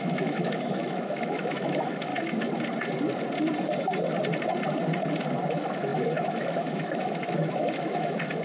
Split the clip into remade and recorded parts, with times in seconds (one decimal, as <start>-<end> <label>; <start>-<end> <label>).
0.0-2.1 remade; 2.1-5.5 recorded; 5.5-8.4 remade